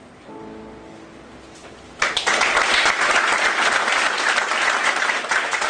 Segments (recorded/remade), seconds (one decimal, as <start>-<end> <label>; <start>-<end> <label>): 0.0-5.7 recorded